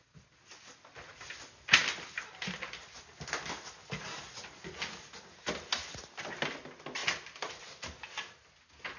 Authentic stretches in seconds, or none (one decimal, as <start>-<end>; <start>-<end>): 0.0-9.0